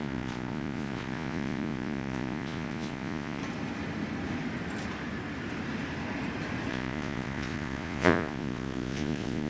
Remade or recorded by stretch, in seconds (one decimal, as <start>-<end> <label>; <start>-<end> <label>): 0.0-3.4 remade; 3.4-6.7 recorded; 6.7-9.5 remade